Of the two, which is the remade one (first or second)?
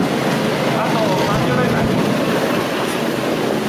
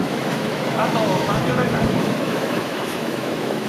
second